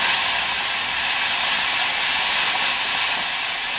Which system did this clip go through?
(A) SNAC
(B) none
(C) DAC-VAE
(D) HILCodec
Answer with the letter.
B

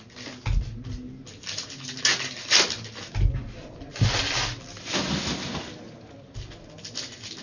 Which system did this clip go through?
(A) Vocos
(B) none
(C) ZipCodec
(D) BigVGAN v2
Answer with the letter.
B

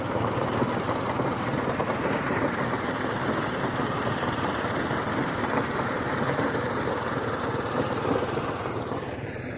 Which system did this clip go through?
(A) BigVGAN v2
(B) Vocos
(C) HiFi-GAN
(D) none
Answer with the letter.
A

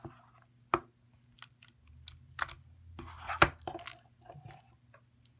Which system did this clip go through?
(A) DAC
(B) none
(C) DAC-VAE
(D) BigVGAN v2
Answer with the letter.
B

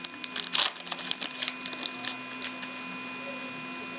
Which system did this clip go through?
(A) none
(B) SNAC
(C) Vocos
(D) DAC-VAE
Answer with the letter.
A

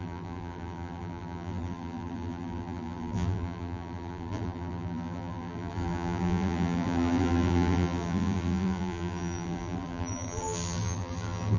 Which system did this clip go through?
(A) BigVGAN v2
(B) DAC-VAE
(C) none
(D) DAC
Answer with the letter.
A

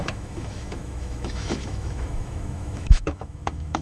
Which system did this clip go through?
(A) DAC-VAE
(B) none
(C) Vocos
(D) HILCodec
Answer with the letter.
A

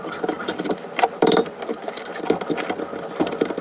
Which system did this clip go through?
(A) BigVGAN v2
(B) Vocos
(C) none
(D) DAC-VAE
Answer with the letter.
A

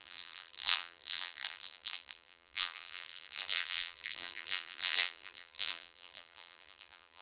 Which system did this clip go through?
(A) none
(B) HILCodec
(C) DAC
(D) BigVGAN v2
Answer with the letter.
D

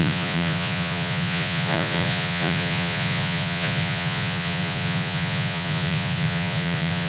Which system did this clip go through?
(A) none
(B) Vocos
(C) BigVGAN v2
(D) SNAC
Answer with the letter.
B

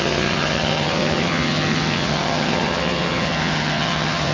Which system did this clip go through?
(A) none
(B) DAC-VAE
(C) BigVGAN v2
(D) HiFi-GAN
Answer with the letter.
D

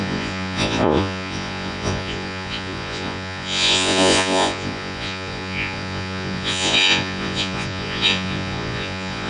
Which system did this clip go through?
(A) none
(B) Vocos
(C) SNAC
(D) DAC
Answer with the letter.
B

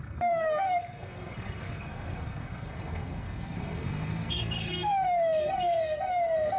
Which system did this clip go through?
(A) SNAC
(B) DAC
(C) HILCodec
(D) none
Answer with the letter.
A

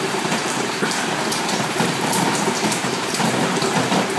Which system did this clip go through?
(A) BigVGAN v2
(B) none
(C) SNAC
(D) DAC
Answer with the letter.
A